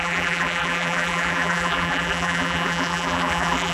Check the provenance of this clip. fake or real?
fake